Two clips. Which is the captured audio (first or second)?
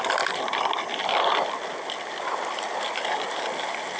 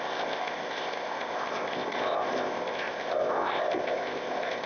first